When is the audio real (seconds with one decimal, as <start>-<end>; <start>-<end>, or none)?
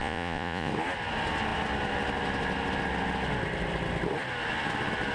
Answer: 0.7-5.1